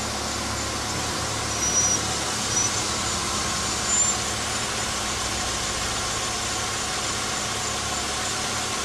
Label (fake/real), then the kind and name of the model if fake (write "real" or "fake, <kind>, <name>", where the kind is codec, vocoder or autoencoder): real